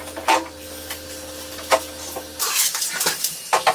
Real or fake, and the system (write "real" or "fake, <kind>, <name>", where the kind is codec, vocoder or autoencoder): real